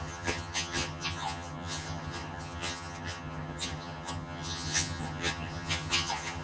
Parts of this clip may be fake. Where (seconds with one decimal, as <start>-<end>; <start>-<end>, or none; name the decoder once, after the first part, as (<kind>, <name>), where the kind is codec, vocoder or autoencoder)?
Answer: 0.0-6.4 (vocoder, HiFi-GAN)